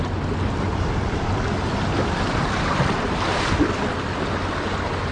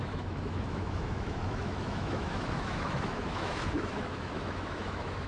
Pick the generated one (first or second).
second